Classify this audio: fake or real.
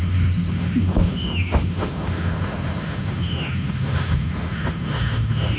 fake